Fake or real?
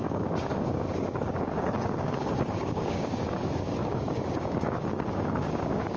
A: fake